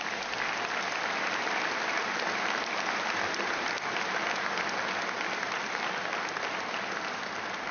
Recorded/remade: recorded